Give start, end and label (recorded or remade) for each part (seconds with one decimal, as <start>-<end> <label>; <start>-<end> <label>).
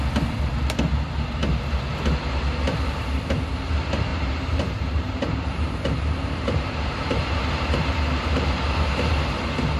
0.0-4.1 recorded; 4.1-9.2 remade; 9.2-9.8 recorded